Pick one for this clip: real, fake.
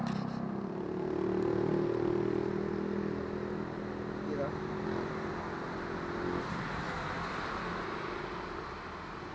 real